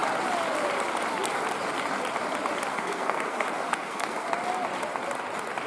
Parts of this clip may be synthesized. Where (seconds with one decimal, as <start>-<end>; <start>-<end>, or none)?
2.7-4.3